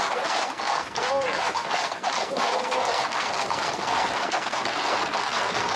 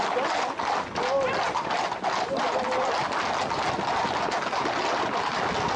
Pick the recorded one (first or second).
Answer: second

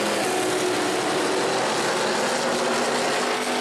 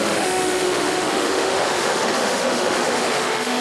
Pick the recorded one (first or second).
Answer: first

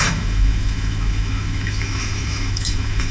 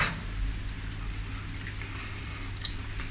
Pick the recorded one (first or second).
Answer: second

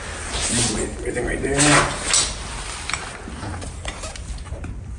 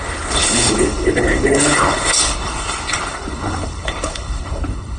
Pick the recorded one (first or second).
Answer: first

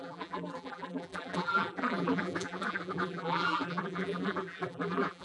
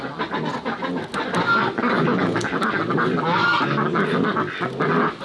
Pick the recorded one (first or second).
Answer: second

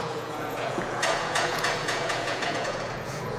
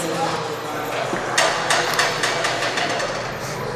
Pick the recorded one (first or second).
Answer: second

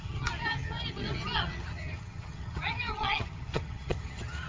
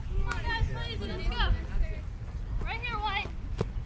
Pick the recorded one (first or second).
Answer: second